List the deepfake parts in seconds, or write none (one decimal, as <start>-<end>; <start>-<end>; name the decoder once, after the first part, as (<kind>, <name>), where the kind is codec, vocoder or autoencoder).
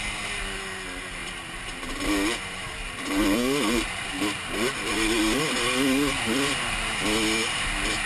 1.2-5.4 (vocoder, BigVGAN v2)